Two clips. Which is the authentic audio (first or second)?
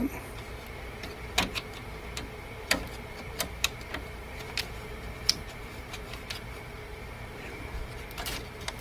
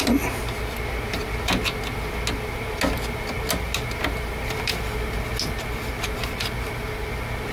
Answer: second